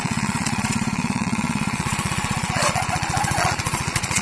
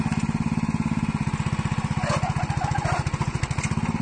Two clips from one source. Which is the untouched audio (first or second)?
second